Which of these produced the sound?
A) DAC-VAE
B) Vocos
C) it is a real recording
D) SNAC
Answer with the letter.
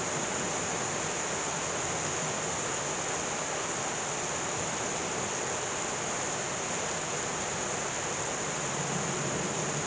C